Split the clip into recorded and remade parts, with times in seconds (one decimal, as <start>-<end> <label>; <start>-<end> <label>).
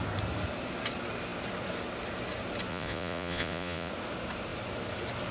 0.0-2.7 recorded; 2.7-3.9 remade; 3.9-5.3 recorded